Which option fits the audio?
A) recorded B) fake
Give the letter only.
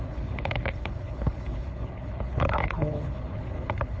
B